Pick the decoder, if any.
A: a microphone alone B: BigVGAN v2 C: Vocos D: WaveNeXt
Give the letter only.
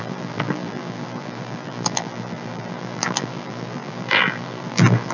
B